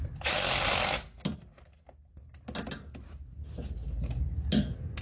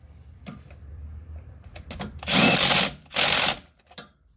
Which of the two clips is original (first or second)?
first